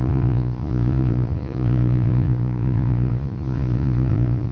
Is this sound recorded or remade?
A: remade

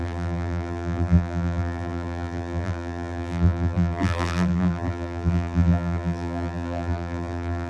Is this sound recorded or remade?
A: remade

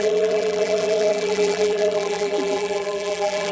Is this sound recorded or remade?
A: remade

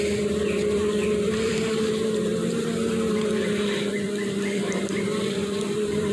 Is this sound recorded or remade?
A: remade